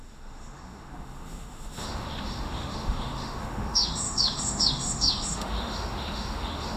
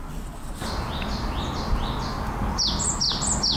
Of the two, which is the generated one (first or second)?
first